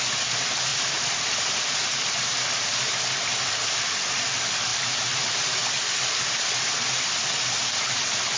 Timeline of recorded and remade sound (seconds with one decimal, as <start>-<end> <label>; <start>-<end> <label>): 0.0-8.4 recorded